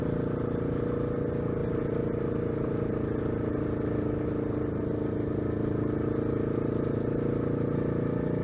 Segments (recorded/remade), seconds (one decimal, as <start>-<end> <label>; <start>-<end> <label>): 0.0-8.4 recorded